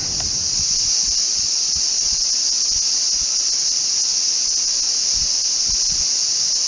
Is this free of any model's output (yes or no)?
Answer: yes